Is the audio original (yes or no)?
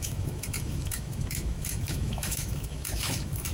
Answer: no